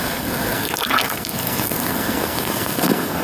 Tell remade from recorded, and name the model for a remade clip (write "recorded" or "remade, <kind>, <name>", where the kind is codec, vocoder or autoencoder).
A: remade, codec, SNAC